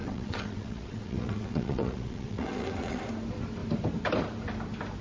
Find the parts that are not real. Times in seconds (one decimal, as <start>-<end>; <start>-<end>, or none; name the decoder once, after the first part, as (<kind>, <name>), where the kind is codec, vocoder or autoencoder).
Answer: 0.0-3.0 (vocoder, WaveNeXt)